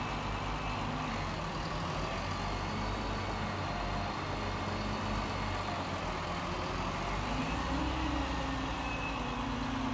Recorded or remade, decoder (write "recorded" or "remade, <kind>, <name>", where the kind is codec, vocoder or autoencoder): recorded